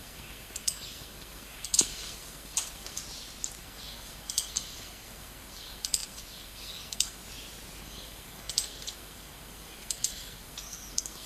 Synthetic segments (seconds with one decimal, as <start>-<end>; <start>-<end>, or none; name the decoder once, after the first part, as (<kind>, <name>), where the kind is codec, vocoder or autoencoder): 0.0-3.0 (codec, SNAC); 3.6-7.2; 7.8-11.3